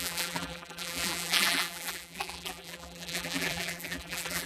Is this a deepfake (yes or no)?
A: yes